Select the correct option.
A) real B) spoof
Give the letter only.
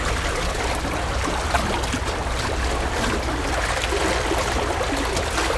A